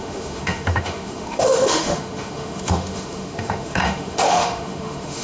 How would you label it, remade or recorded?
remade